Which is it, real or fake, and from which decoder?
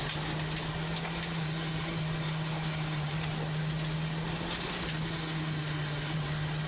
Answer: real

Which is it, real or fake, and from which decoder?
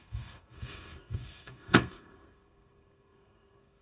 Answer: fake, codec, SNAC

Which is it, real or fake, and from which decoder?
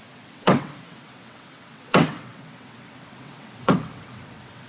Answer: fake, vocoder, WaveNeXt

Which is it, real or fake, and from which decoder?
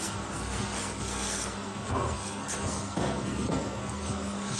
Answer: fake, codec, SNAC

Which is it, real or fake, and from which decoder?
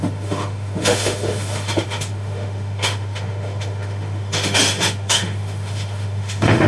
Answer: fake, autoencoder, DAC-VAE